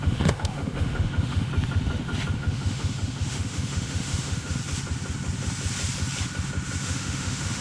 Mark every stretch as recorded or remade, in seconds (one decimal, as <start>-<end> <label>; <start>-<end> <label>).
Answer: 0.0-1.5 remade; 1.5-2.3 recorded; 2.3-4.6 remade; 4.6-6.8 recorded; 6.8-7.6 remade